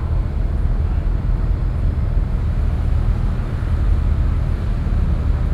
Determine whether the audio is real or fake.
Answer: real